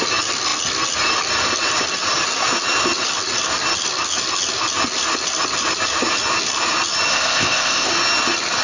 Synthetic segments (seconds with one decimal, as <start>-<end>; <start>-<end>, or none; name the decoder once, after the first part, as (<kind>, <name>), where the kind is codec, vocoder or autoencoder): 7.1-7.9 (codec, ZipCodec)